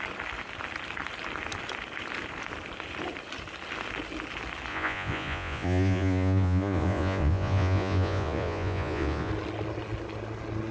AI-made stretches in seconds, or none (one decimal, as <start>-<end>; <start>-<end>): 4.7-9.3